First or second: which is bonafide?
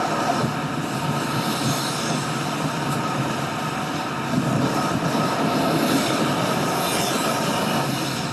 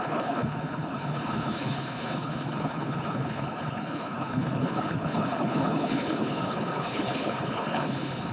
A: first